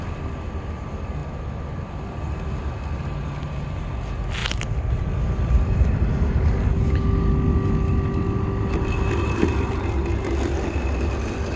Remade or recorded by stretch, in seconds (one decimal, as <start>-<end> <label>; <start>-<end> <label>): 0.0-4.4 recorded; 4.4-6.6 remade; 6.6-11.6 recorded